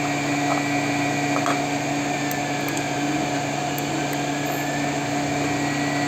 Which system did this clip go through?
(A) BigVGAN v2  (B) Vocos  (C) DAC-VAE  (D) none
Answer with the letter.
D